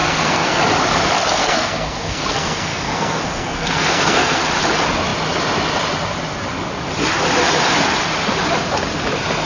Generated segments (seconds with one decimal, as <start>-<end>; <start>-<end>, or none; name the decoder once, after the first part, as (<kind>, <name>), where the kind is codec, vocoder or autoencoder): 0.0-0.6 (codec, SNAC); 1.4-4.4